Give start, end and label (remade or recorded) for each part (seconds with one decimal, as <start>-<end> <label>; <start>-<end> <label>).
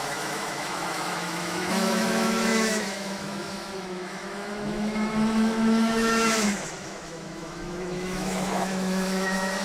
0.0-9.6 remade